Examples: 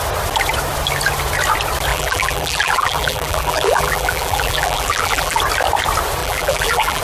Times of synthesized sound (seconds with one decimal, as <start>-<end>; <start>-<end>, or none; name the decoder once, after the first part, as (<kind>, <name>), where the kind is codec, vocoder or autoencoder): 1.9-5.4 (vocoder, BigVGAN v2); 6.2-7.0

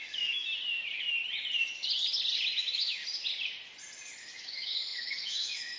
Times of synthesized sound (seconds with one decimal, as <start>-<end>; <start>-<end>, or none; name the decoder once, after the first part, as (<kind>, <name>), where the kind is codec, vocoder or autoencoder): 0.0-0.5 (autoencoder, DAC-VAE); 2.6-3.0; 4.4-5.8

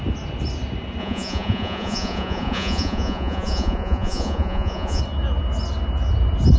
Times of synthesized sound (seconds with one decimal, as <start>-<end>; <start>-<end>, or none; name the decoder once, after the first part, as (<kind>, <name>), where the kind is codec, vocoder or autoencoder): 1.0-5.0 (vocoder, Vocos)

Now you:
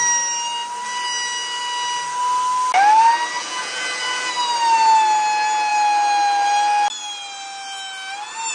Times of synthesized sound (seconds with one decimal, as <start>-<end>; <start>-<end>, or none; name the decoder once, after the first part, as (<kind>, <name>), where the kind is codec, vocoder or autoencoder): 3.4-4.3 (vocoder, Vocos)

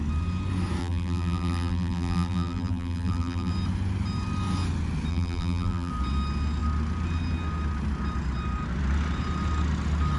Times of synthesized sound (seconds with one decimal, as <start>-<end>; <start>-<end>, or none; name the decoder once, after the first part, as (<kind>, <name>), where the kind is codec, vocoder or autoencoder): 0.8-3.5 (vocoder, BigVGAN v2); 5.1-5.9

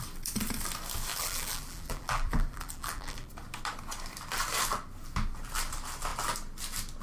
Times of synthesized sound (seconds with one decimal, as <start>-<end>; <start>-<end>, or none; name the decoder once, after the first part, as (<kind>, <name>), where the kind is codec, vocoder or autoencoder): 1.1-3.3 (vocoder, BigVGAN v2)

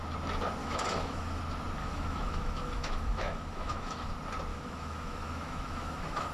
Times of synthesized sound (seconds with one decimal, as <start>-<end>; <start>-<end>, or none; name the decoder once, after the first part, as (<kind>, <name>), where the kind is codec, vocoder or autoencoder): 0.6-1.4 (autoencoder, DAC-VAE); 1.8-4.1; 4.5-6.3

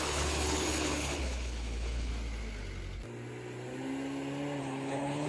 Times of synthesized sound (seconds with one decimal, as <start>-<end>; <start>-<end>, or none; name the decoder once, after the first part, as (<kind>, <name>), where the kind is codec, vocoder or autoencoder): 0.0-2.1 (codec, HILCodec); 4.6-5.3